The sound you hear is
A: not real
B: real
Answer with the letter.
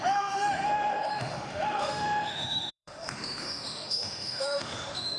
A